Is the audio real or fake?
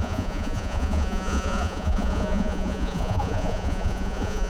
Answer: fake